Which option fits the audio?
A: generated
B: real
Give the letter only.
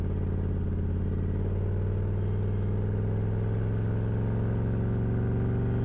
B